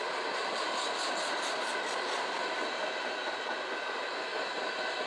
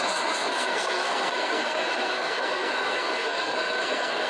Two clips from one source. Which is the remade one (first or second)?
second